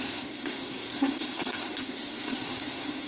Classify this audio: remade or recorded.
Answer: remade